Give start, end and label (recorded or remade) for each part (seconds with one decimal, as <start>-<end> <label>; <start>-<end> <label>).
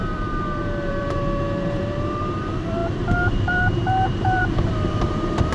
0.0-5.5 remade